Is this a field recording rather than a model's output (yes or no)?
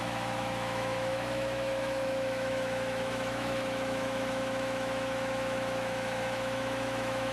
no